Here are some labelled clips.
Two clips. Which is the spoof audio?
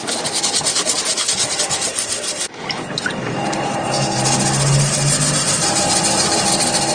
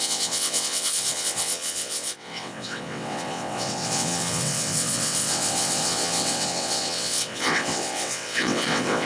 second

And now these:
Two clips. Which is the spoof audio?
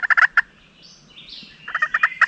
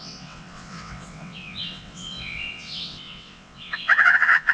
second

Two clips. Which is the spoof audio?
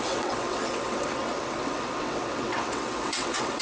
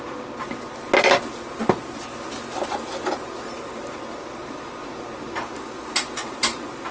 first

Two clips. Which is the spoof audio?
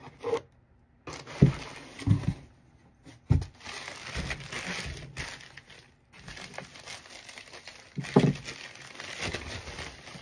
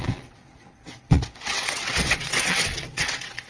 second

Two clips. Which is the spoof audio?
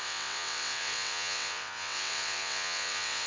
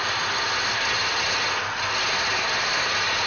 first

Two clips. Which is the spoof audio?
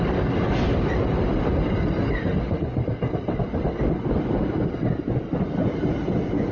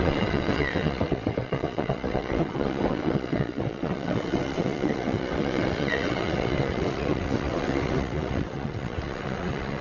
second